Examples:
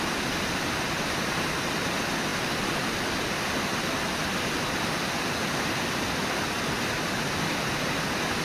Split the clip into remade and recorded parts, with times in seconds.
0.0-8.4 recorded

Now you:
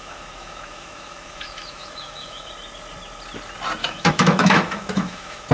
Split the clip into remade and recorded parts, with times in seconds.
0.0-2.5 remade; 2.5-3.8 recorded; 3.8-5.5 remade